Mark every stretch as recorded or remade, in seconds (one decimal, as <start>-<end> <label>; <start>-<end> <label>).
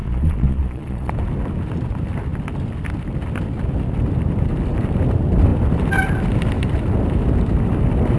0.0-1.1 remade; 1.1-8.2 recorded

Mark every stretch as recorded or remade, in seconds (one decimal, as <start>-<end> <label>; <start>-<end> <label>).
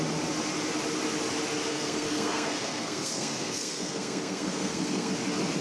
0.0-1.7 recorded; 1.7-5.1 remade; 5.1-5.6 recorded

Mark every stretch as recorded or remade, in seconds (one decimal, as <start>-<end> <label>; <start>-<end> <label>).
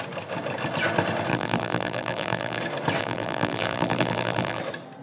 0.0-1.3 recorded; 1.3-2.6 remade; 2.6-3.0 recorded; 3.0-4.6 remade; 4.6-5.0 recorded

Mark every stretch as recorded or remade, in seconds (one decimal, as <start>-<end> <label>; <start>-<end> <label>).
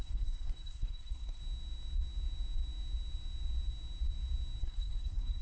0.0-1.4 remade; 1.4-4.6 recorded; 4.6-5.4 remade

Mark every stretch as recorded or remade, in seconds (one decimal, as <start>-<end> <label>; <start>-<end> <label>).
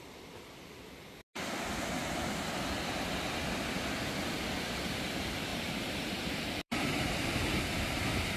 0.0-5.5 recorded; 5.5-7.6 remade; 7.6-8.4 recorded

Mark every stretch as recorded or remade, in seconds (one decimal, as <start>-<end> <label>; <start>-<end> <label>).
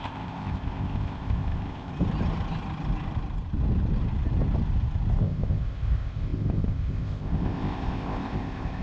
0.0-1.9 remade; 1.9-5.2 recorded; 5.2-8.8 remade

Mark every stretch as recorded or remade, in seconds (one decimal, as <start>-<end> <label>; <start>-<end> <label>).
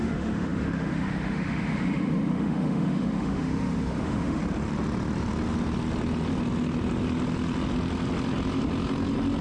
0.0-4.4 remade; 4.4-9.4 recorded